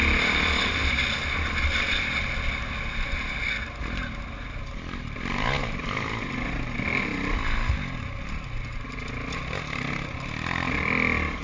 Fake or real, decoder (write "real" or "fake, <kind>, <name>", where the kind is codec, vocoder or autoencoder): real